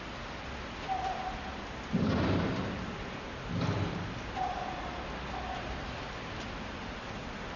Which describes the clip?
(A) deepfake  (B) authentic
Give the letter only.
B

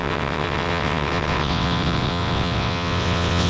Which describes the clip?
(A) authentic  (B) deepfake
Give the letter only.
B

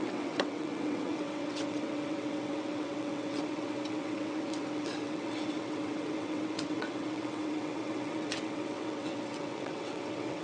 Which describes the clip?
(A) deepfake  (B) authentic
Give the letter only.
A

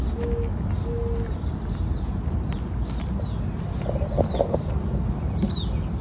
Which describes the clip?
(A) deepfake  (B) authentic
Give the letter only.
B